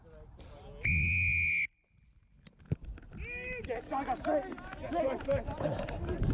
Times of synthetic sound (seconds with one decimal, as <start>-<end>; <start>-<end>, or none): none

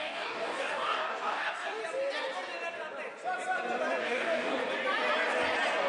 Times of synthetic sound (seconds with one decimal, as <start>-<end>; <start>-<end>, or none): 0.0-1.8; 4.0-4.6

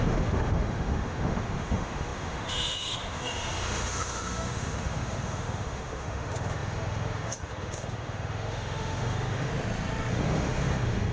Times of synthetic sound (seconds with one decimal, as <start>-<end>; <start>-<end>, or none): 0.0-9.5; 10.1-11.1

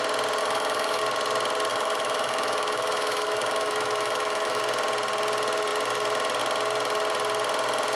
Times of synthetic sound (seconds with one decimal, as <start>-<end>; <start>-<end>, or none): 0.4-1.0; 1.7-4.6